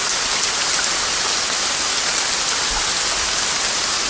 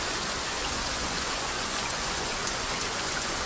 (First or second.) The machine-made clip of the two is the second